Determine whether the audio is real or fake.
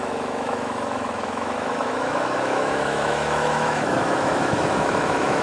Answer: fake